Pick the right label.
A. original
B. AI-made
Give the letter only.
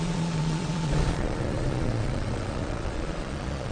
B